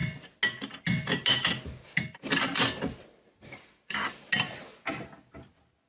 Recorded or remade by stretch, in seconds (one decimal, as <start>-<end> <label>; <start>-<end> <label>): 0.0-5.9 recorded